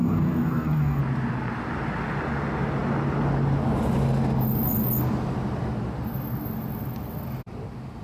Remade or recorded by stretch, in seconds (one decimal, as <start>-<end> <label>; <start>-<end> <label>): 0.0-1.0 remade; 1.0-8.0 recorded